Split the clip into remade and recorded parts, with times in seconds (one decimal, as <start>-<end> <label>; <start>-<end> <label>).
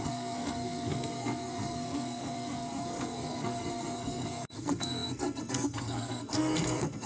0.0-7.1 remade